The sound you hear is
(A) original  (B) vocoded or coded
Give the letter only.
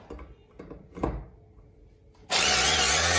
A